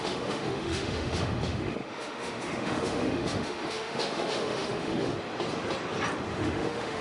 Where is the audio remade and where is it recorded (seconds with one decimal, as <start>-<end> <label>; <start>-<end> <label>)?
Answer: 0.0-5.1 remade; 5.1-6.3 recorded; 6.3-7.0 remade